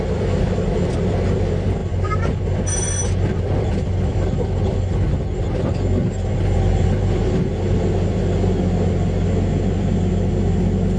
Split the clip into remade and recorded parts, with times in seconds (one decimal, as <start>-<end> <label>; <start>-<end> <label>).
0.0-11.0 recorded